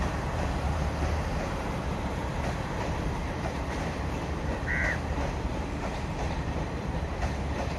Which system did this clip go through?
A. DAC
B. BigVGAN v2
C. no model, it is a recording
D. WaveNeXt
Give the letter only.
B